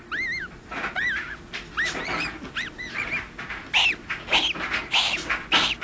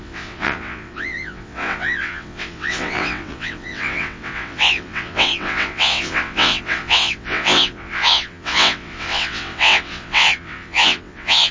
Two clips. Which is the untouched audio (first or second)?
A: first